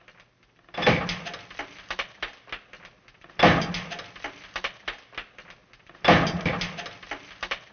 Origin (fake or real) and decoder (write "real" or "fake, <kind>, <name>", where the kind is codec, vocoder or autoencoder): real